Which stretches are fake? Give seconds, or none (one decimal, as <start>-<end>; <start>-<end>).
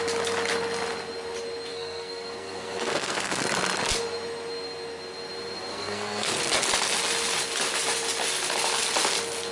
1.7-3.4; 5.7-6.4